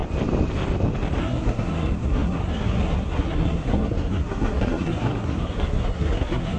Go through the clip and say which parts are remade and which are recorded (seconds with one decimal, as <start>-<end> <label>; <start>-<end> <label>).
0.0-1.2 recorded; 1.2-6.6 remade